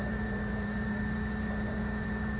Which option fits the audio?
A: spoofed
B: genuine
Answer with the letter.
A